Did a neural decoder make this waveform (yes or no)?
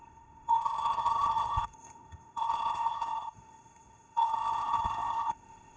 yes